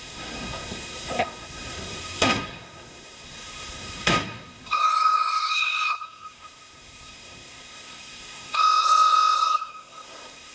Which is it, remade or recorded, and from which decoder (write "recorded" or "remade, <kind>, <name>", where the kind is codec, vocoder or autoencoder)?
remade, codec, SNAC